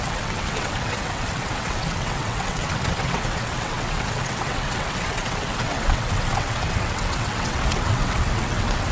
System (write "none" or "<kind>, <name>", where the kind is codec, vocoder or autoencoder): vocoder, WaveNeXt